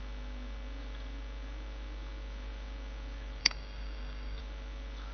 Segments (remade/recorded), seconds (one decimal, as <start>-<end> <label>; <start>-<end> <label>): 0.0-3.4 recorded; 3.4-4.4 remade; 4.4-5.1 recorded